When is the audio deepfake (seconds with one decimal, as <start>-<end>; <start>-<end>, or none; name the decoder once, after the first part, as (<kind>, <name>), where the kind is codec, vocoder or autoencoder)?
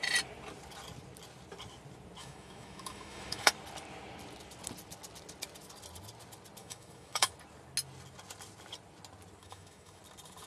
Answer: 2.2-3.5 (autoencoder, DAC-VAE); 6.6-7.3; 9.4-10.0